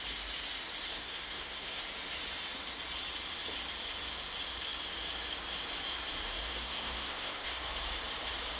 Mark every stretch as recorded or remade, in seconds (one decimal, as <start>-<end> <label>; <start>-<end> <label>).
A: 0.0-0.9 recorded; 0.9-1.8 remade; 1.8-6.4 recorded; 6.4-7.6 remade; 7.6-8.6 recorded